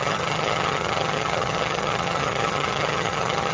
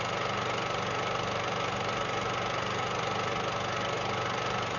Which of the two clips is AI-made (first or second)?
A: first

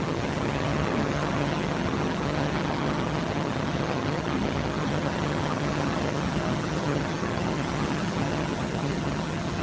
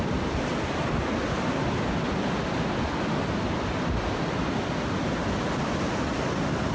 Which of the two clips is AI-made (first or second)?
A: first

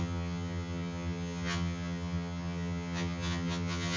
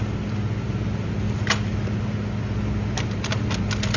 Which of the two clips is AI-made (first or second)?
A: first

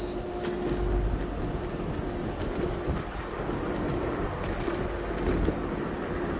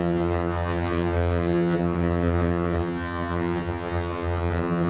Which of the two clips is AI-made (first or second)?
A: second